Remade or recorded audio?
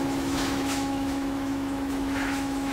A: remade